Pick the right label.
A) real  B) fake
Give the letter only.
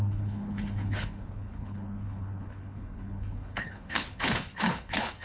B